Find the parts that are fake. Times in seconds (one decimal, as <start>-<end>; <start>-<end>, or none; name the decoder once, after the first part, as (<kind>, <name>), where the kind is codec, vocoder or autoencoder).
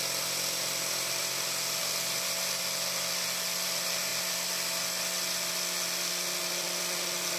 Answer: none